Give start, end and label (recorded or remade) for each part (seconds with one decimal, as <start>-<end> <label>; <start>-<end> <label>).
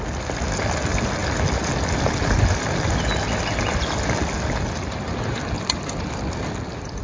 0.0-7.0 recorded